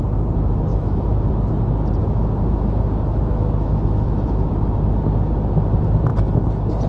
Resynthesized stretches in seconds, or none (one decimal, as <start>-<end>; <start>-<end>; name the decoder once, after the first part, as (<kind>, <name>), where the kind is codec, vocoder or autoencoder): 0.7-1.3 (autoencoder, DAC-VAE); 2.0-4.5